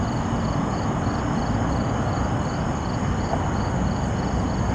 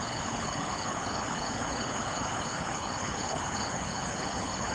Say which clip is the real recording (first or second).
first